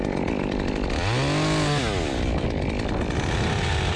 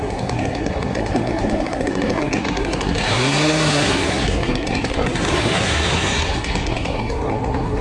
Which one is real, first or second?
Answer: first